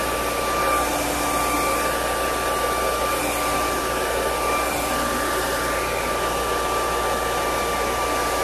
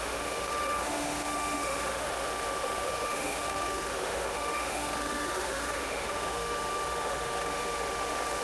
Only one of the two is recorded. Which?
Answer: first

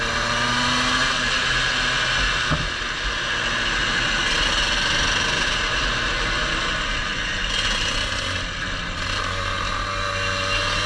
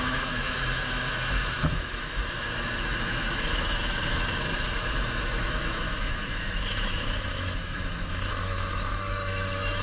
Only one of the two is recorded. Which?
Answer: first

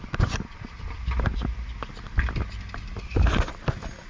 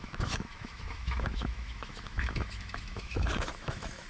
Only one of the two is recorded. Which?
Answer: first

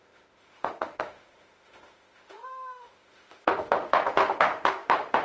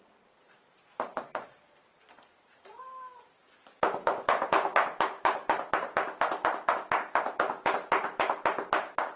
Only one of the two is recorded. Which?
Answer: second